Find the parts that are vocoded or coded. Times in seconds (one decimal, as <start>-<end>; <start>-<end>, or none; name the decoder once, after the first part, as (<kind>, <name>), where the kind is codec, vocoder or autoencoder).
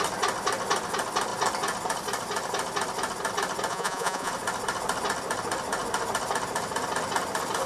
3.7-4.3 (vocoder, Vocos)